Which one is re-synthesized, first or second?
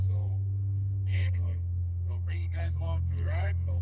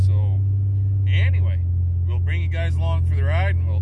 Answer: first